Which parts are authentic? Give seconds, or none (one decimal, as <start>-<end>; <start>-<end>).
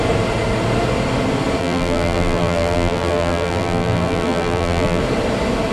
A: 0.0-1.6; 5.0-5.7